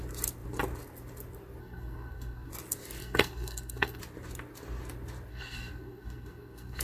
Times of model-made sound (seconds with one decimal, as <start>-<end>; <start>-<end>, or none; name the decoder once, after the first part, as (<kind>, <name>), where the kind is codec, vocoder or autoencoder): 1.6-2.5 (codec, SNAC); 3.0-4.0; 5.3-6.8

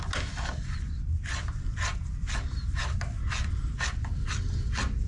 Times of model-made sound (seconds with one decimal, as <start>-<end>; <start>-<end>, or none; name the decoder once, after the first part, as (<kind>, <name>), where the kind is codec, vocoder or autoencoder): none

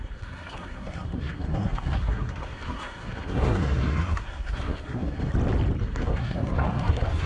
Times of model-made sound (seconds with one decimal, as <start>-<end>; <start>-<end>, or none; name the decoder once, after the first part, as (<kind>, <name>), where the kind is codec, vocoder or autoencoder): 0.0-5.3 (codec, SNAC); 5.8-7.3

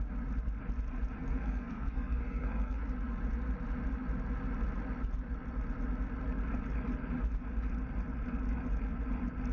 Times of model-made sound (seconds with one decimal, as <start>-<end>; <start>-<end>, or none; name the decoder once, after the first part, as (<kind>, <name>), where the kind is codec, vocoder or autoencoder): 1.2-2.8 (codec, SNAC)